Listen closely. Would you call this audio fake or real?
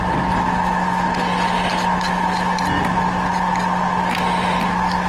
real